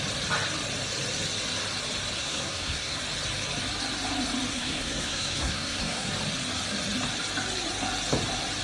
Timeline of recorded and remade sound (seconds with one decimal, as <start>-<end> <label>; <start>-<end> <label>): 0.0-2.2 recorded; 2.2-3.0 remade; 3.0-4.5 recorded; 4.5-6.1 remade; 6.1-8.6 recorded